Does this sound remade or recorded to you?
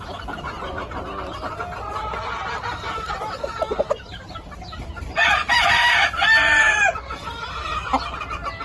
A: recorded